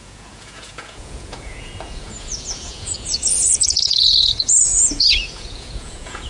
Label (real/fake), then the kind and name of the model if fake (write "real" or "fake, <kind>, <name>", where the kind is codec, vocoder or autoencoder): fake, vocoder, Vocos